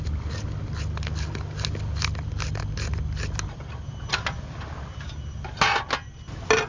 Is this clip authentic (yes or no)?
yes